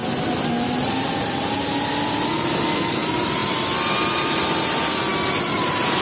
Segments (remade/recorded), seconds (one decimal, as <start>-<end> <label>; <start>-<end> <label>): 0.0-6.0 recorded